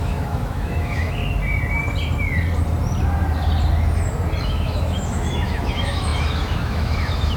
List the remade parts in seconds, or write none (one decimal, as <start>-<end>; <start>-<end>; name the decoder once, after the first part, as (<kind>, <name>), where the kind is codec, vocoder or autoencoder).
0.0-1.2 (autoencoder, DAC-VAE); 4.4-7.4